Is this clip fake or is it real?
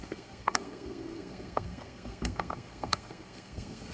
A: fake